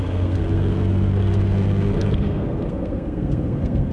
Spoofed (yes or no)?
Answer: yes